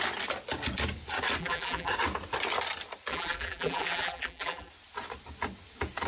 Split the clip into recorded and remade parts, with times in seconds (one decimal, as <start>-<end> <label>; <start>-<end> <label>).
0.0-1.4 recorded; 1.4-1.9 remade; 1.9-3.1 recorded; 3.1-4.7 remade; 4.7-6.1 recorded